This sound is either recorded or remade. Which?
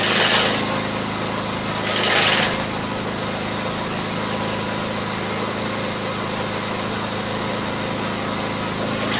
recorded